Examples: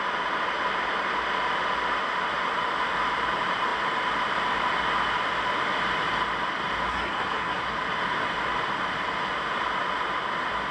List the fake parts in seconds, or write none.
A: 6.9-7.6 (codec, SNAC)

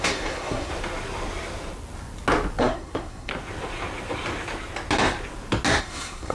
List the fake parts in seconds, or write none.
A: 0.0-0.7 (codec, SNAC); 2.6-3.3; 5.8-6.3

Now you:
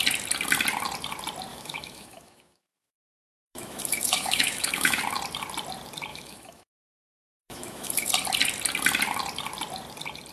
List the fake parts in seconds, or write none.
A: 1.5-5.0 (autoencoder, DAC-VAE); 6.1-8.1

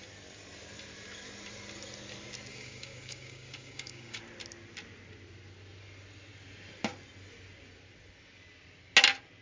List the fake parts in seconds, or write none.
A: 2.5-4.2 (codec, DAC)

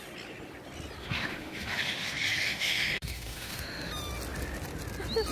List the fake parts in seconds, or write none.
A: 1.0-3.9 (autoencoder, DAC-VAE)

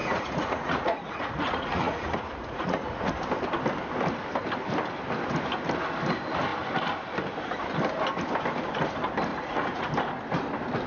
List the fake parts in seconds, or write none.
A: 0.0-3.1 (vocoder, Vocos); 9.3-9.9

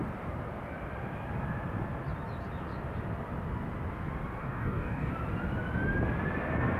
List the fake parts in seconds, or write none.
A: 4.4-5.1 (codec, DAC)

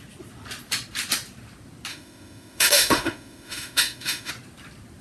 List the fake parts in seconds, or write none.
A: 1.9-4.3 (autoencoder, DAC-VAE)